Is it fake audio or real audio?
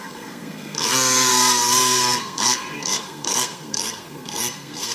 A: fake